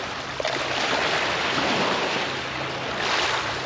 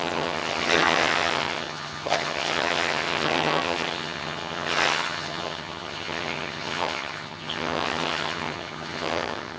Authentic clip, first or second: first